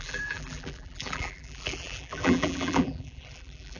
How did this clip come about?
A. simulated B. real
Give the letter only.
A